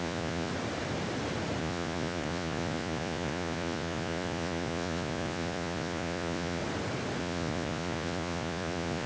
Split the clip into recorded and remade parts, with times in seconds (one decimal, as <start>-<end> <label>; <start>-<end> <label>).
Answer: 0.0-0.5 remade; 0.5-1.6 recorded; 1.6-6.6 remade; 6.6-7.2 recorded; 7.2-9.1 remade